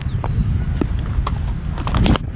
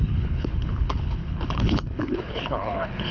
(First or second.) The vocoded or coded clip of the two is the second